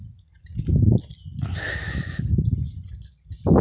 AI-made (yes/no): no